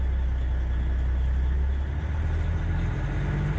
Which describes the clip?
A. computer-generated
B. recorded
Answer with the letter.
B